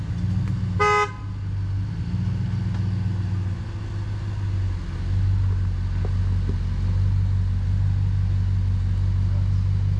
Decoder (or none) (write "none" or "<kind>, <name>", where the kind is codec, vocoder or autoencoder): none